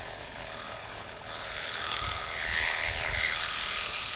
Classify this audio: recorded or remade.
remade